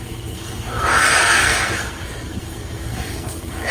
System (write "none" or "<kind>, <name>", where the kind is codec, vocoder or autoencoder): codec, SNAC